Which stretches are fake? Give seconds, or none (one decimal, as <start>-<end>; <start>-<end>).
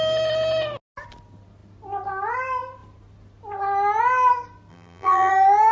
4.7-5.3